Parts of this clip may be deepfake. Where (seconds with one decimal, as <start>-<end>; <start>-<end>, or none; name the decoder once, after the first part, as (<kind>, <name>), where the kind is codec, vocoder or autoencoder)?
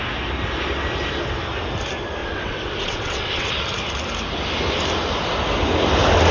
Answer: 2.2-3.5 (vocoder, WaveNeXt)